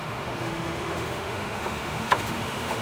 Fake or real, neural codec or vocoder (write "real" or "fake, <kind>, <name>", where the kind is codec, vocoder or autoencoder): fake, autoencoder, DAC-VAE